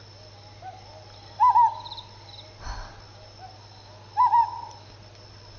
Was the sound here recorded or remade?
recorded